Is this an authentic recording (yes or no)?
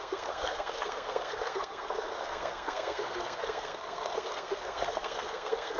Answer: no